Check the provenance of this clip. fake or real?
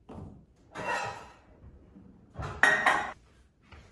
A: real